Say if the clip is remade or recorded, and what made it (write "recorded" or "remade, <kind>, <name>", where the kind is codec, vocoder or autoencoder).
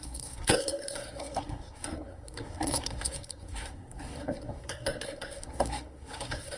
remade, codec, SNAC